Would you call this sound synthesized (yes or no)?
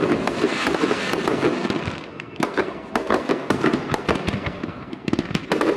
yes